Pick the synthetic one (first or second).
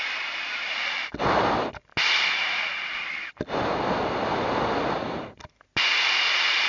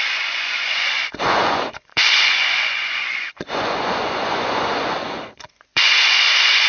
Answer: second